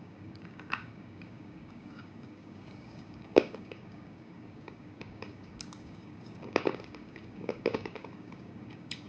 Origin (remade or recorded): remade